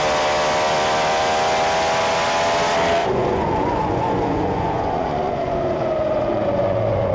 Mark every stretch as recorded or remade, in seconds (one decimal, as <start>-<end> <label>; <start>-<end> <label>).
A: 0.0-3.0 recorded; 3.0-7.1 remade

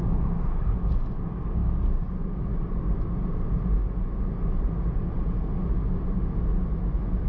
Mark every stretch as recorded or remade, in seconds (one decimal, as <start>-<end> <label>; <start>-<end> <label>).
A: 0.0-7.3 recorded

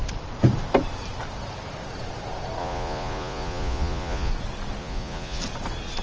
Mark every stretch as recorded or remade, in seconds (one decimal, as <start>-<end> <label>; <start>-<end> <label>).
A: 0.0-2.6 recorded; 2.6-4.3 remade; 4.3-4.8 recorded; 4.8-5.4 remade; 5.4-6.0 recorded

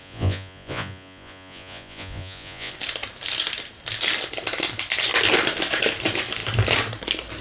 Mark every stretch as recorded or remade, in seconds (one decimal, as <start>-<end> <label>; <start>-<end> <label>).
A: 0.0-2.7 remade; 2.7-7.4 recorded

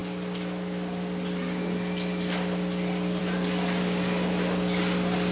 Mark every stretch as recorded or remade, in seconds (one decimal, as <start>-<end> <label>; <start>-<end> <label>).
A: 0.0-5.3 recorded

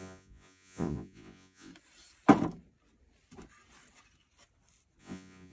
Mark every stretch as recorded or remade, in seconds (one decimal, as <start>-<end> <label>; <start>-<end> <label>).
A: 0.0-1.7 remade; 1.7-5.0 recorded; 5.0-5.5 remade

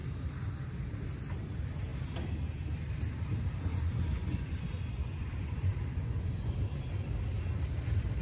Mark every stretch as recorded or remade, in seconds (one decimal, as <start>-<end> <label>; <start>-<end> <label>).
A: 0.0-3.7 recorded; 3.7-6.6 remade; 6.6-8.2 recorded